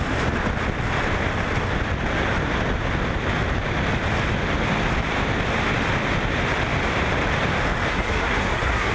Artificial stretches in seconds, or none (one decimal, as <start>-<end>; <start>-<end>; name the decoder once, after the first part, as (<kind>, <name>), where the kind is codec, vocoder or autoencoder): 7.9-8.9 (codec, SNAC)